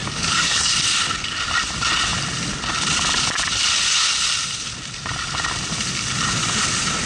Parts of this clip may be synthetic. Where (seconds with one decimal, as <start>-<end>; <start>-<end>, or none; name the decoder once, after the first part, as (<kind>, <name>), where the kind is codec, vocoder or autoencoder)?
0.0-0.7 (codec, DAC)